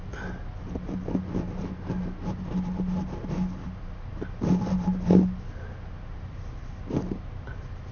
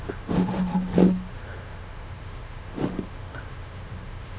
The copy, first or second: second